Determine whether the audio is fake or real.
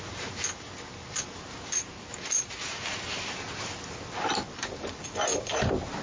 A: real